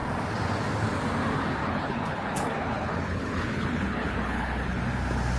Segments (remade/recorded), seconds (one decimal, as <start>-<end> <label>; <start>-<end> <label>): 0.0-1.6 recorded; 1.6-4.8 remade; 4.8-5.4 recorded